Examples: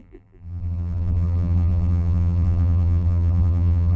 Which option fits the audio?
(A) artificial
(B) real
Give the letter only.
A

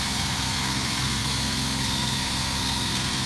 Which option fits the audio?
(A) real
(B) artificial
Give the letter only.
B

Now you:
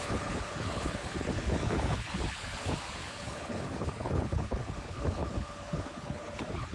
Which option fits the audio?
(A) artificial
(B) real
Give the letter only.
A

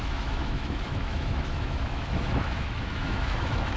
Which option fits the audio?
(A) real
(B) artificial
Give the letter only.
B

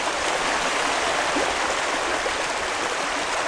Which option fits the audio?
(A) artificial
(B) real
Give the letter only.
B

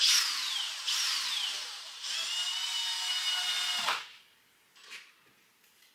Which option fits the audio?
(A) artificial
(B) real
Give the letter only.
B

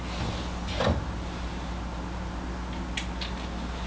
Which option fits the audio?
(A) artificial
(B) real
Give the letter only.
B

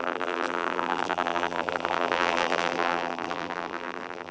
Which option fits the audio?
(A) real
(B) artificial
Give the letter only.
B